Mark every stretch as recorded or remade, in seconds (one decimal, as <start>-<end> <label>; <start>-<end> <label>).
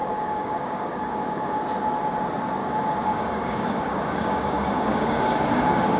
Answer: 0.0-1.6 remade; 1.6-2.6 recorded; 2.6-6.0 remade